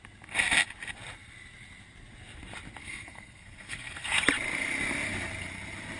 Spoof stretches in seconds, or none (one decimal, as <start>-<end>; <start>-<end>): 2.8-4.2